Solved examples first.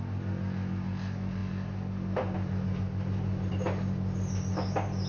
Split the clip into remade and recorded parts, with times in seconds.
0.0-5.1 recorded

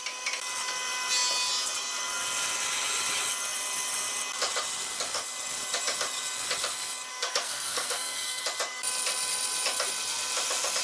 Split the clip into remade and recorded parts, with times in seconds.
0.0-7.1 recorded; 7.1-8.4 remade; 8.4-10.8 recorded

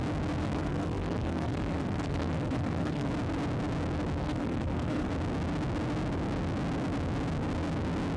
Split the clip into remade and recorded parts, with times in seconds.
0.0-0.4 recorded; 0.4-3.1 remade; 3.1-4.2 recorded; 4.2-5.1 remade; 5.1-8.2 recorded

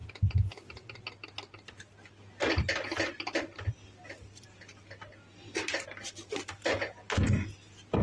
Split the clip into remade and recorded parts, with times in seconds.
0.0-8.0 recorded

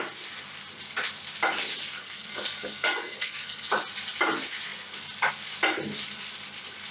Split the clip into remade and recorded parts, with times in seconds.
0.0-1.8 recorded; 1.8-3.7 remade; 3.7-6.9 recorded